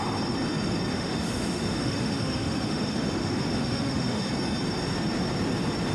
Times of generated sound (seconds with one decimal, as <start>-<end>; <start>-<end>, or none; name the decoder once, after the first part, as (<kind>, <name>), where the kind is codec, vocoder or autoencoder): 0.9-4.3 (autoencoder, DAC-VAE)